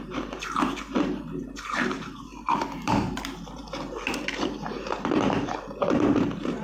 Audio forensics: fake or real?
fake